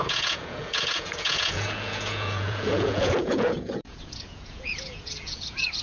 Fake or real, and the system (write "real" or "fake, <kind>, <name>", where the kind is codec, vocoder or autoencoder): fake, vocoder, Vocos